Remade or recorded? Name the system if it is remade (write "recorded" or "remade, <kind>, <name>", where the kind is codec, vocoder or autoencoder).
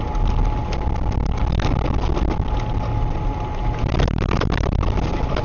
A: recorded